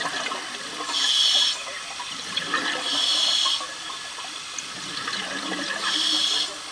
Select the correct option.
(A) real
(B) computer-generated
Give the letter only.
A